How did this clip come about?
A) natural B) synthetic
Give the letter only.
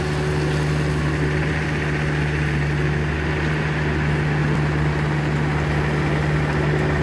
A